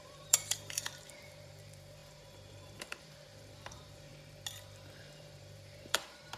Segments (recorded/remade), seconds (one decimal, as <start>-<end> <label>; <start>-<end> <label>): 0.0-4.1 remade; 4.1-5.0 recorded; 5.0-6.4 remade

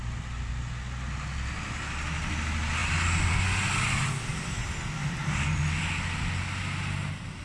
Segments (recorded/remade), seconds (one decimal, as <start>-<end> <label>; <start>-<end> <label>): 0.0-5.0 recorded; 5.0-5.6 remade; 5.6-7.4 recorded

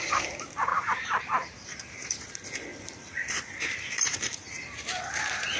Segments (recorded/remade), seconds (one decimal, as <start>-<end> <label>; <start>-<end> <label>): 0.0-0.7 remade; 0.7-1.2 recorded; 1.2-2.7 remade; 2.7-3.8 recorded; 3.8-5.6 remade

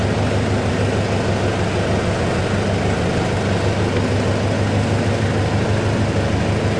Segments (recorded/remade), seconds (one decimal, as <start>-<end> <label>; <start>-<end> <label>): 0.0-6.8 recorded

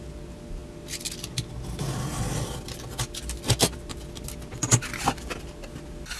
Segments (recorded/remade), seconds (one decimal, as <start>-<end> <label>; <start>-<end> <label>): 0.0-4.5 recorded; 4.5-5.5 remade; 5.5-6.2 recorded